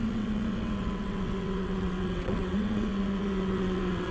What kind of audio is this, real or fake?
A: fake